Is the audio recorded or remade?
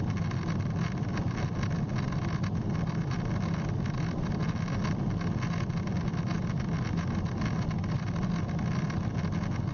recorded